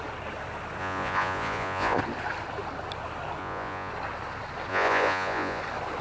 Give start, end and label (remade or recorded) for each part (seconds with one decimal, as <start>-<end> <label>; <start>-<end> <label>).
0.0-0.8 recorded; 0.8-2.0 remade; 2.0-3.4 recorded; 3.4-3.9 remade; 3.9-4.7 recorded; 4.7-5.6 remade; 5.6-6.0 recorded